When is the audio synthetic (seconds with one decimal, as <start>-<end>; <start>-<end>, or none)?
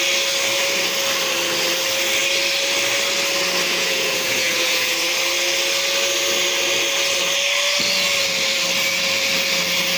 3.7-5.1